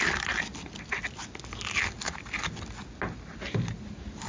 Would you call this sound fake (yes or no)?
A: no